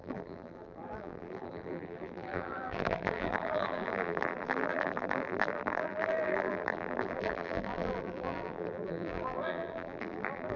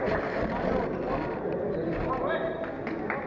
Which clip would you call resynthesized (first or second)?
first